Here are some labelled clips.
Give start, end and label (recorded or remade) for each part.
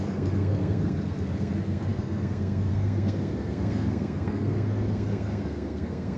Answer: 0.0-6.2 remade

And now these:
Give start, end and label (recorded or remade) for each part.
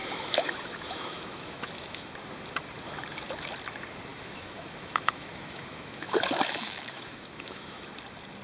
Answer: 0.0-2.1 remade; 2.1-4.1 recorded; 4.1-7.9 remade; 7.9-8.4 recorded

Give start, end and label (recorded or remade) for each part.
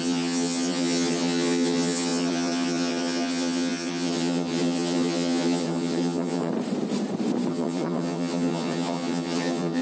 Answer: 0.0-6.5 remade; 6.5-7.5 recorded; 7.5-9.8 remade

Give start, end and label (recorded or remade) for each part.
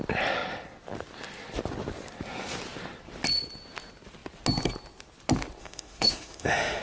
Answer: 0.0-5.6 recorded; 5.6-6.8 remade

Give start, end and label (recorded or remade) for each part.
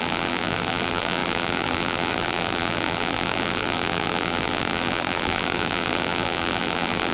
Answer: 0.0-7.1 remade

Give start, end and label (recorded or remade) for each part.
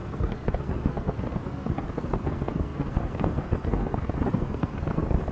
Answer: 0.0-5.3 remade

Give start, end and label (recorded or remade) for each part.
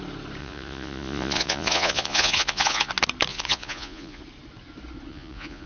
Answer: 0.0-0.4 recorded; 0.4-2.9 remade; 2.9-3.3 recorded; 3.3-4.2 remade; 4.2-5.1 recorded; 5.1-5.7 remade